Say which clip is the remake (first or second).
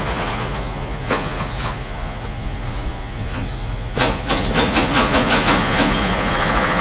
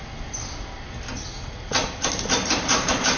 first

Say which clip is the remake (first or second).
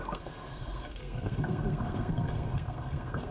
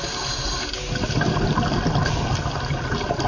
first